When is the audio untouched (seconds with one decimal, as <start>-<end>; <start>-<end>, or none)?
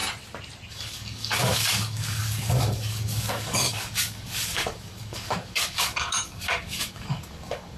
0.0-0.7